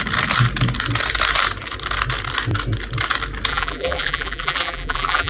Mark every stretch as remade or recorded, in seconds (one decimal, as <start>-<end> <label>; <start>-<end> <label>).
0.0-3.5 recorded; 3.5-5.3 remade